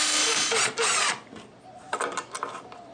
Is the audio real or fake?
real